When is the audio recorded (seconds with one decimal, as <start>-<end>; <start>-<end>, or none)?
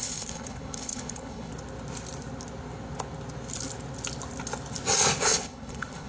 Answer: 1.5-5.2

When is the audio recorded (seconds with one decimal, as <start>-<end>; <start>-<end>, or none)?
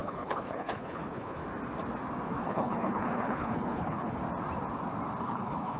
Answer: 1.4-2.3; 4.2-5.2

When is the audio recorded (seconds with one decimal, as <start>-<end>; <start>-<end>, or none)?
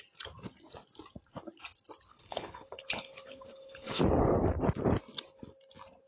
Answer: 0.0-2.1; 4.0-6.1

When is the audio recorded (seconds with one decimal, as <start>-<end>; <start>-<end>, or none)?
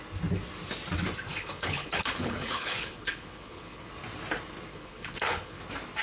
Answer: 0.0-1.3; 3.9-4.7; 5.6-6.0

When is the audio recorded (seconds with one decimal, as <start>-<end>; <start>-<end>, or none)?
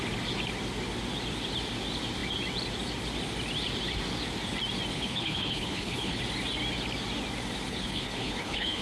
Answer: 0.0-4.9; 6.2-7.7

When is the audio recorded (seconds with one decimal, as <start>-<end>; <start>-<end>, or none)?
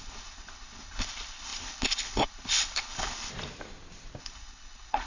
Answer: 3.3-4.2